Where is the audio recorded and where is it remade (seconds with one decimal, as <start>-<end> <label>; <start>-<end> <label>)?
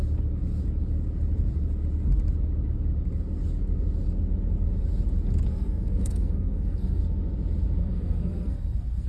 0.0-5.5 recorded; 5.5-7.0 remade; 7.0-7.8 recorded; 7.8-9.1 remade